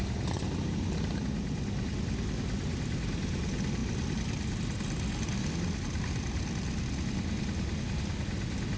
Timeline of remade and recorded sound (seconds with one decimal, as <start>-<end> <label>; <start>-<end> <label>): 0.0-8.8 recorded